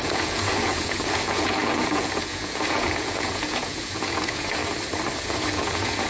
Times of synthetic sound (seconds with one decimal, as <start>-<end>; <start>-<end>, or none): 0.0-4.6; 5.2-6.1